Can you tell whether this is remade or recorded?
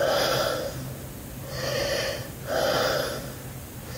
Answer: recorded